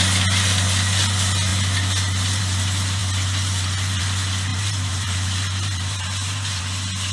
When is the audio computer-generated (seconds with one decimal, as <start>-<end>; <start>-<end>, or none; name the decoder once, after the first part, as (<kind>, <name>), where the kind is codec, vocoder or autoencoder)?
4.5-6.6 (vocoder, BigVGAN v2)